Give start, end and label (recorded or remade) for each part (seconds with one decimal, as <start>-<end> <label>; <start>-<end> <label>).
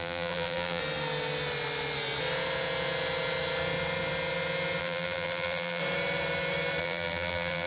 0.0-0.8 remade; 0.8-4.8 recorded; 4.8-5.8 remade; 5.8-6.8 recorded; 6.8-7.7 remade